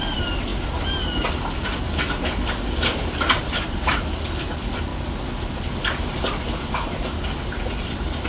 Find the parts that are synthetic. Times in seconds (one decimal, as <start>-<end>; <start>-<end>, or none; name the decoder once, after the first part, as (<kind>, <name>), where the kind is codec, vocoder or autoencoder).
none